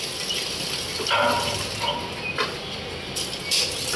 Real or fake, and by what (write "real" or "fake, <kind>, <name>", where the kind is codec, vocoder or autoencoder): real